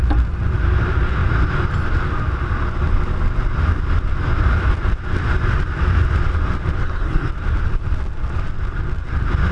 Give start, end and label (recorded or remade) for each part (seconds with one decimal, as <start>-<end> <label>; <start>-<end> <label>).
0.0-6.8 recorded; 6.8-7.3 remade; 7.3-9.5 recorded